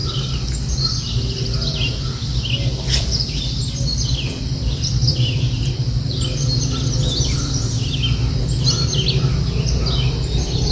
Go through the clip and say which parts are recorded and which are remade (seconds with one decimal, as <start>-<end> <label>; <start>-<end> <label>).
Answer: 0.0-10.7 recorded